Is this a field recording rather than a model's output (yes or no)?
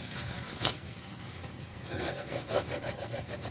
no